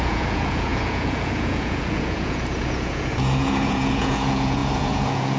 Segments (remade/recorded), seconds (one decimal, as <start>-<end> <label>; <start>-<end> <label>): 0.0-5.4 remade

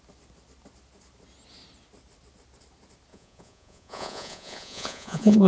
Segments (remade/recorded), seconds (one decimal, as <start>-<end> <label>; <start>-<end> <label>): 0.0-3.1 recorded; 3.1-5.5 remade